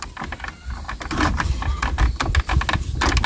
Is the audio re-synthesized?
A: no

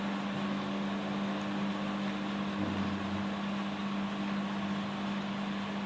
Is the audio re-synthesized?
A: no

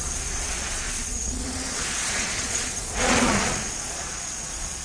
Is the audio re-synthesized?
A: yes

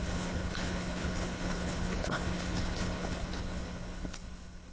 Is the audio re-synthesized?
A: yes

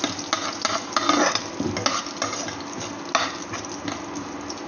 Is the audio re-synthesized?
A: no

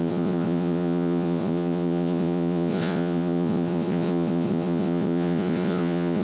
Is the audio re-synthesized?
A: yes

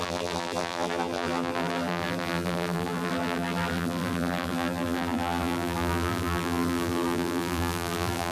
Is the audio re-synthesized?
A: yes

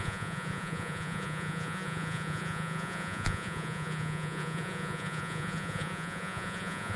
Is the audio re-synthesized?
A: yes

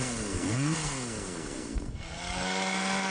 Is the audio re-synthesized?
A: yes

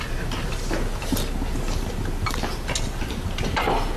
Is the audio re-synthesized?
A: no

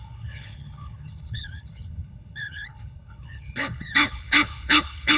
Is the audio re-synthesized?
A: yes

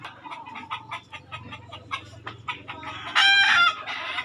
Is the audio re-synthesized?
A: no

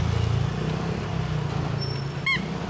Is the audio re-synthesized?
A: no